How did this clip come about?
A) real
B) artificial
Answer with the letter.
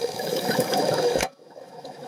B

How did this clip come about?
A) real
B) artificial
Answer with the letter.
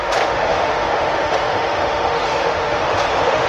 B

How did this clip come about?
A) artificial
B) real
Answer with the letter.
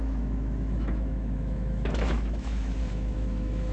A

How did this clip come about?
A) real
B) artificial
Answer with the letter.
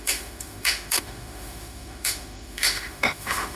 B